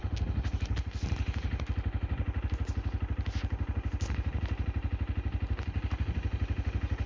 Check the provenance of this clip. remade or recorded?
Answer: recorded